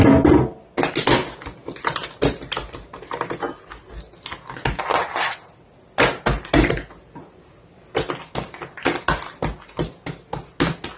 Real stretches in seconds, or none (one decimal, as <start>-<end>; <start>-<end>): 0.0-1.6; 2.3-11.0